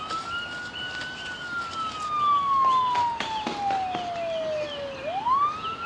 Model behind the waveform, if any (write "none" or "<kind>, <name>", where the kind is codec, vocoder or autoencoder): none